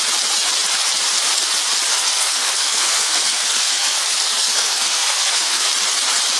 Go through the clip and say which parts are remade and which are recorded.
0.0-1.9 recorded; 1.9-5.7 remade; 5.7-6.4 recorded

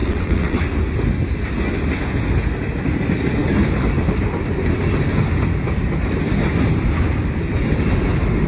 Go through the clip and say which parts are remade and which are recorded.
0.0-0.6 remade; 0.6-8.5 recorded

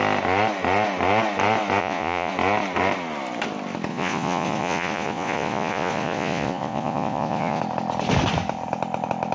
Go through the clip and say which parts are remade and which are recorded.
0.0-1.8 recorded; 1.8-2.3 remade; 2.3-3.9 recorded; 3.9-7.6 remade; 7.6-9.3 recorded

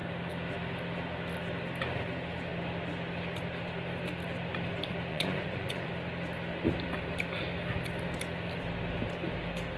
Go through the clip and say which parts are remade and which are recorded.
0.0-5.1 recorded; 5.1-5.9 remade; 5.9-9.8 recorded

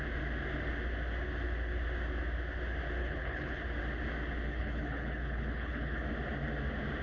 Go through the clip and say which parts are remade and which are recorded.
0.0-3.0 recorded; 3.0-3.6 remade; 3.6-4.5 recorded; 4.5-6.0 remade; 6.0-7.0 recorded

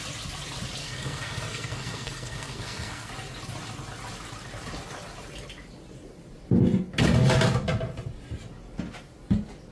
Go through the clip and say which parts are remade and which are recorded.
0.0-0.8 recorded; 0.8-3.1 remade; 3.1-9.7 recorded

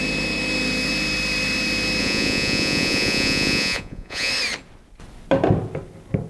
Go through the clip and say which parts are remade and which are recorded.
0.0-2.0 recorded; 2.0-4.3 remade; 4.3-6.3 recorded

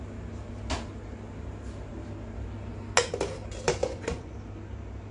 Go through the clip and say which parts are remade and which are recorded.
0.0-3.8 recorded; 3.8-4.3 remade; 4.3-5.1 recorded